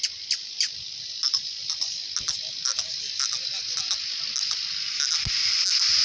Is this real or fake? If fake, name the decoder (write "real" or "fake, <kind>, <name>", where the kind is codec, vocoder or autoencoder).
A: real